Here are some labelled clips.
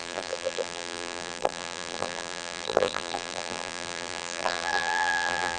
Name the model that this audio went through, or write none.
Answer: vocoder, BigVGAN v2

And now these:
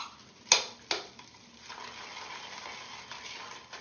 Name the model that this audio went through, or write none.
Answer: none